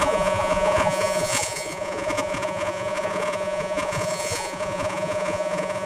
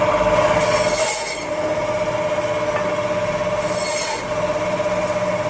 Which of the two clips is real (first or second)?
second